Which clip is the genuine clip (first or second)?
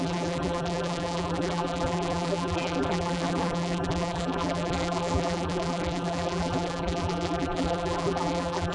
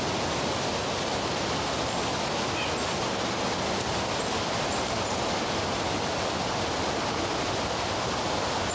second